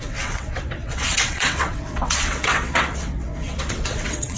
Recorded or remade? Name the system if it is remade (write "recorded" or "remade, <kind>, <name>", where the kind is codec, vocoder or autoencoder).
remade, vocoder, WaveNeXt